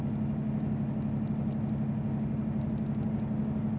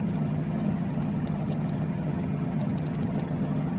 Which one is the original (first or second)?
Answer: first